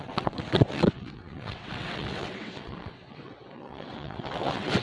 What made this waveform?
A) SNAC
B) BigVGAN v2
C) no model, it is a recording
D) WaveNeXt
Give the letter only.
D